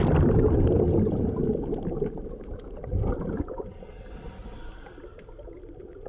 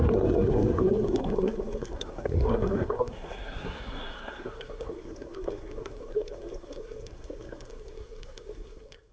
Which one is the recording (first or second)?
first